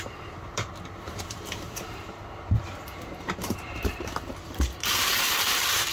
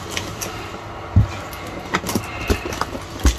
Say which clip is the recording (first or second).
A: second